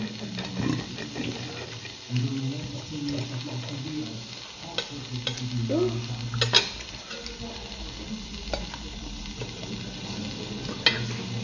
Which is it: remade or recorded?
recorded